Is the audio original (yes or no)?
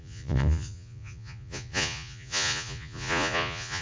no